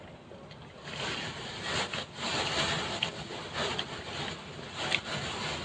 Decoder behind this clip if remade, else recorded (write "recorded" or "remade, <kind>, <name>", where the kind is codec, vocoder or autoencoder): recorded